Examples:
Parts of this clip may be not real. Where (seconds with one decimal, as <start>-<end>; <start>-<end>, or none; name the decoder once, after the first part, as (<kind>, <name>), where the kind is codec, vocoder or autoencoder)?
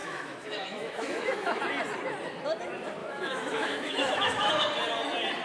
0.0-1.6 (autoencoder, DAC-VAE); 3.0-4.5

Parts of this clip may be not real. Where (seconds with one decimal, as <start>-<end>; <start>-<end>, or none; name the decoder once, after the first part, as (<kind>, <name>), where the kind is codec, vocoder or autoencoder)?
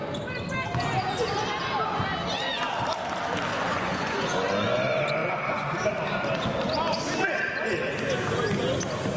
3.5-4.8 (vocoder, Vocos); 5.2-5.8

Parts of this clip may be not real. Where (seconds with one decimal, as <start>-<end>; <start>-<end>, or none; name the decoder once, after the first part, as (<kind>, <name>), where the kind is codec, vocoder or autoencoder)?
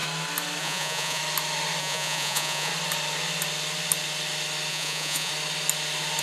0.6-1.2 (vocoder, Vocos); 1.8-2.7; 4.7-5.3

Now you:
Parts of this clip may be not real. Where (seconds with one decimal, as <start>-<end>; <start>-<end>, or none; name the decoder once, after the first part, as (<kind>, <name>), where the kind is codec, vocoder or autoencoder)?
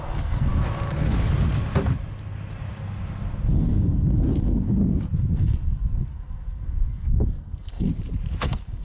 0.0-0.5 (codec, SNAC); 3.5-4.8; 5.3-7.9; 8.4-8.8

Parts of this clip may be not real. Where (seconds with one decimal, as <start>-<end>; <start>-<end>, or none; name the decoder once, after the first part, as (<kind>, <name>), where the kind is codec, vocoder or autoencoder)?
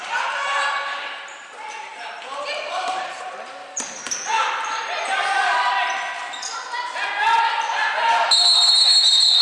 0.0-5.1 (vocoder, BigVGAN v2)